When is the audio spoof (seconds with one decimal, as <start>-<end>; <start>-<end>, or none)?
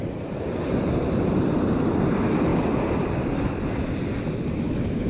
none